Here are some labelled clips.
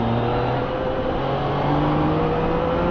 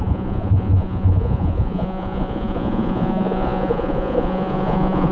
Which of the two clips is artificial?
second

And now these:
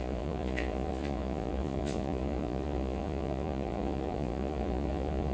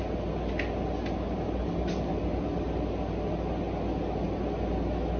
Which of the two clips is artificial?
first